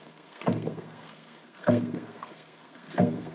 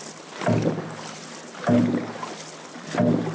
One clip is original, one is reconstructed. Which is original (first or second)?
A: second